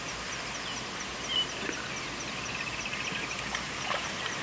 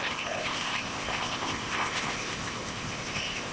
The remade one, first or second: second